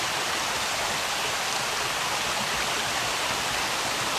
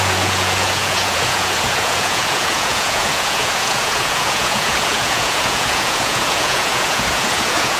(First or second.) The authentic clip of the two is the first